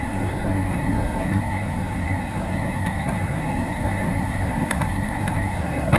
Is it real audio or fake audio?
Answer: fake